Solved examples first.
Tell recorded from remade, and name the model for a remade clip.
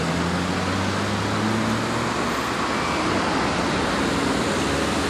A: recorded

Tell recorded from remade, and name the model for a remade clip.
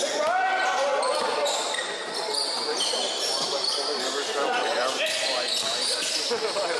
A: recorded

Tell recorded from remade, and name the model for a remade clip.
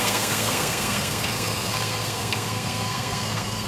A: remade, codec, SNAC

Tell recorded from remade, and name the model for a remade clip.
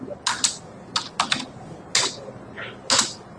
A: recorded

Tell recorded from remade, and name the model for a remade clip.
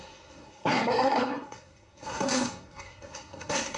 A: remade, codec, SNAC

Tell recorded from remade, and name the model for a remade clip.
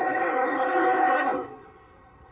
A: remade, codec, SNAC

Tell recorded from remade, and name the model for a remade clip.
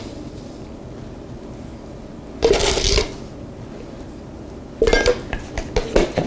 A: recorded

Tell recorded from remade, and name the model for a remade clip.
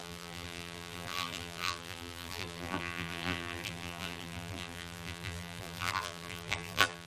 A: remade, vocoder, BigVGAN v2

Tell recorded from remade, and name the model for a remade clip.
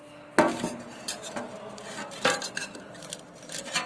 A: recorded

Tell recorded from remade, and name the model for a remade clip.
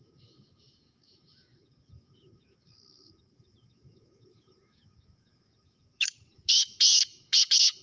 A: remade, autoencoder, DAC-VAE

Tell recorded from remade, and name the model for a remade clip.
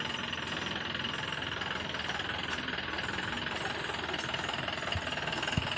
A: recorded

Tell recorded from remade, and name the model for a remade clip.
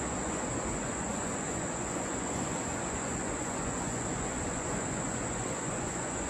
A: remade, vocoder, Vocos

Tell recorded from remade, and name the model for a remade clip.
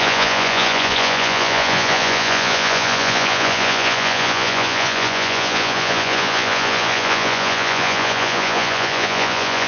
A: remade, vocoder, Vocos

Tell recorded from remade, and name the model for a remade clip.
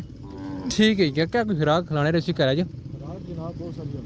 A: recorded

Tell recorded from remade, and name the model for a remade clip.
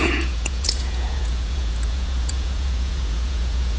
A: remade, vocoder, Vocos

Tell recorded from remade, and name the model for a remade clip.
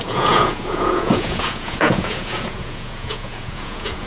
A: remade, vocoder, Vocos